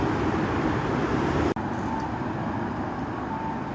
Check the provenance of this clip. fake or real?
real